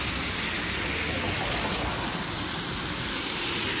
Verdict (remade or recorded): recorded